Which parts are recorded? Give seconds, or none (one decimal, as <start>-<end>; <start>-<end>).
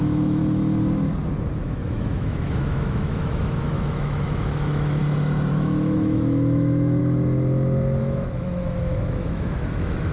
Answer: 0.4-1.6; 5.0-5.5; 7.0-8.0